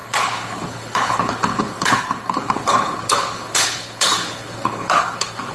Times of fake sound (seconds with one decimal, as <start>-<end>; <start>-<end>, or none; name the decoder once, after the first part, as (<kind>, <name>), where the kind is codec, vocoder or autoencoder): 0.0-5.5 (codec, HILCodec)